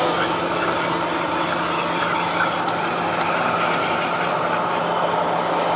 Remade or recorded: recorded